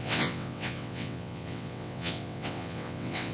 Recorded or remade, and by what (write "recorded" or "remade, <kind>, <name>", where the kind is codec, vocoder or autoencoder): remade, vocoder, WaveNeXt